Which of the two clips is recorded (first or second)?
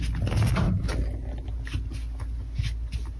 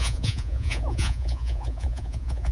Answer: first